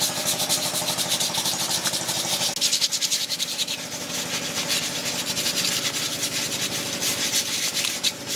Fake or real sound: real